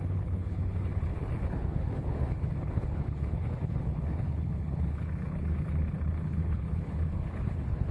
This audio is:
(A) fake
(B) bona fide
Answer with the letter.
A